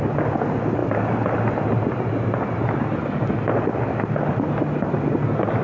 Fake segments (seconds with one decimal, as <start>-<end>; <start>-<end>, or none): none